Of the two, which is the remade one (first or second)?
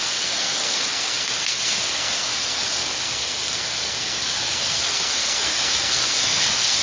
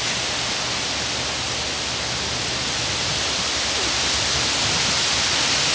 first